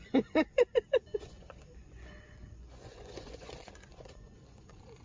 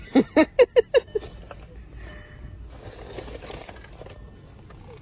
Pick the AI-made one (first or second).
first